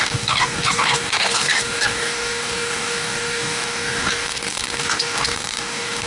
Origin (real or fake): fake